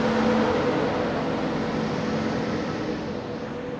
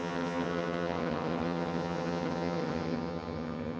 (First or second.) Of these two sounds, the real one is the first